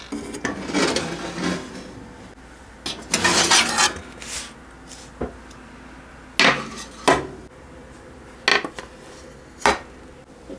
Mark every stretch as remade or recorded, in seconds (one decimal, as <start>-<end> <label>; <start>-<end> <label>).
0.0-10.6 recorded